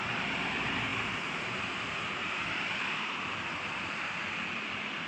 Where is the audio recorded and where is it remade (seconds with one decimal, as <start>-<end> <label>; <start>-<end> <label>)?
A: 0.0-5.1 remade